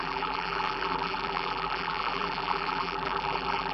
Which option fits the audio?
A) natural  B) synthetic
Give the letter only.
B